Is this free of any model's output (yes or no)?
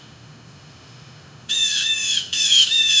no